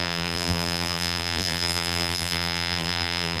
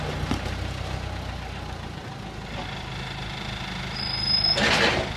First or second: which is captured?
second